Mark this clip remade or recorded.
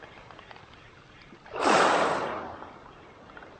recorded